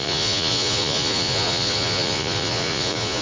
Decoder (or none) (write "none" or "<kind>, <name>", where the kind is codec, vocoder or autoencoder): vocoder, Vocos